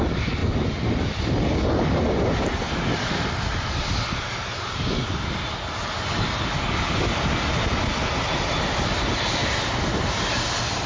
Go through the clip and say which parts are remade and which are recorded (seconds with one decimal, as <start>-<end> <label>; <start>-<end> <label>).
0.0-8.1 recorded; 8.1-8.6 remade; 8.6-10.9 recorded